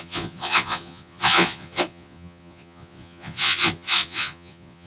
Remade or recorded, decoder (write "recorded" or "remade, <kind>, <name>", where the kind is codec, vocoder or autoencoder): remade, vocoder, Vocos